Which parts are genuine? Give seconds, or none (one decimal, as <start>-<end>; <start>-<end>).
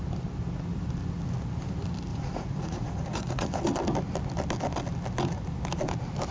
0.0-2.1; 3.6-6.3